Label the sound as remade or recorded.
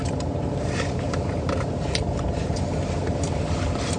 remade